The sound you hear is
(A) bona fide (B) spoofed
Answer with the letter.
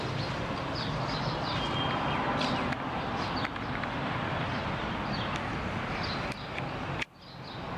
A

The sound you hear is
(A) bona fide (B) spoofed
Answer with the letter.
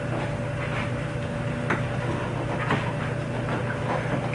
A